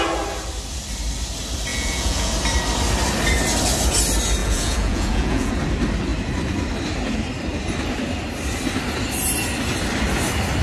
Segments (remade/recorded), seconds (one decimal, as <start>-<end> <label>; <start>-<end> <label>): 0.0-1.7 recorded; 1.7-2.3 remade; 2.3-4.4 recorded; 4.4-5.5 remade; 5.5-10.6 recorded